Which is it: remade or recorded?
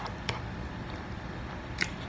recorded